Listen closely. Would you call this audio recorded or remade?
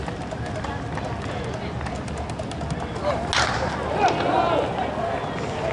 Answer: recorded